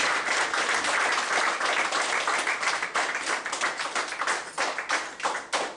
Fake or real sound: real